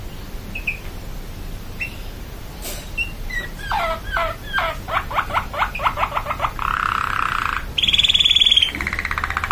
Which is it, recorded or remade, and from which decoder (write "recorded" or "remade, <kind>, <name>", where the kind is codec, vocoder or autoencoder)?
recorded